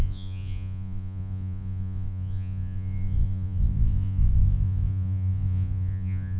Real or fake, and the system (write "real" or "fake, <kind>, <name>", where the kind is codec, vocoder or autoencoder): fake, vocoder, Vocos